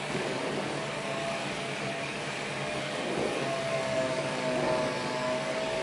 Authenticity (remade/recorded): remade